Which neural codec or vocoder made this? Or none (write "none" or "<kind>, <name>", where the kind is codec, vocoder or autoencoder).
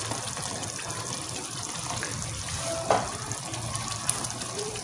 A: none